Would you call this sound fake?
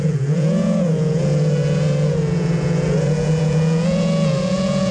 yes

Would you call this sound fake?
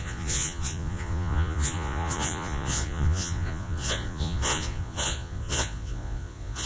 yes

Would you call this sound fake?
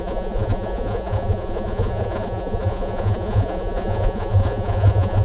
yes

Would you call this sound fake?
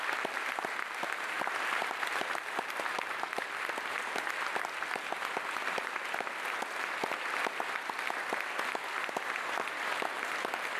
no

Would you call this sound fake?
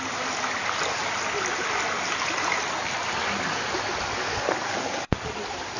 no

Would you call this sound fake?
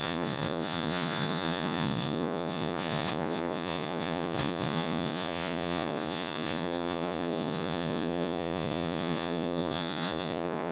yes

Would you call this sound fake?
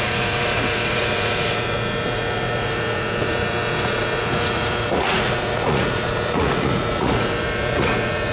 yes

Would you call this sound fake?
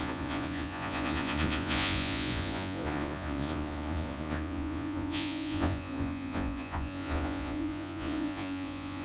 yes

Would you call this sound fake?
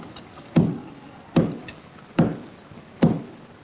no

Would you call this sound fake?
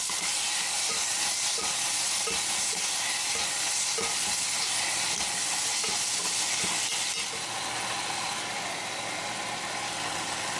no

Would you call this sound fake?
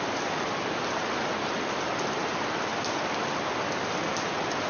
no